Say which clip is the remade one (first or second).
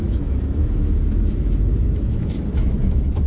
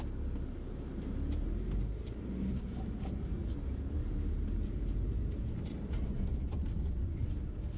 first